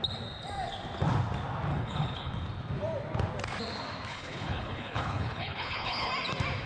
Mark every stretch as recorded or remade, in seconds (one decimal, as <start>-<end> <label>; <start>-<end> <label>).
0.0-1.7 recorded; 1.7-2.3 remade; 2.3-4.1 recorded; 4.1-6.1 remade; 6.1-6.7 recorded